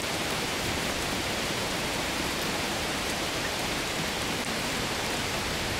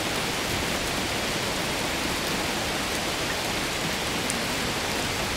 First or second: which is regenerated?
first